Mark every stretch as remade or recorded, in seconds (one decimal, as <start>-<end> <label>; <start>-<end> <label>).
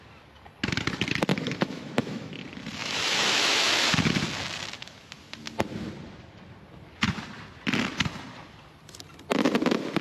0.0-1.3 recorded; 1.3-2.3 remade; 2.3-2.8 recorded; 2.8-3.8 remade; 3.8-10.0 recorded